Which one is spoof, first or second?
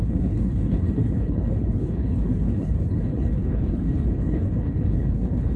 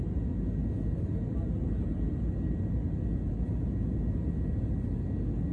first